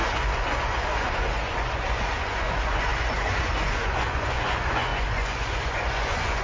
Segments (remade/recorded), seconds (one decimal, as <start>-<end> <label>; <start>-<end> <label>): 0.0-6.4 remade